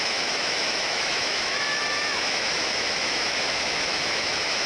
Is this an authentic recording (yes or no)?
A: no